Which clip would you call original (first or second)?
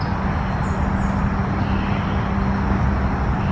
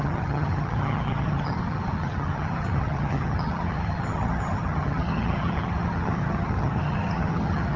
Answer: first